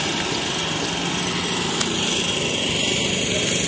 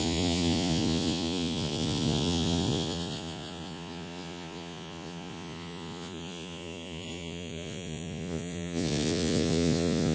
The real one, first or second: first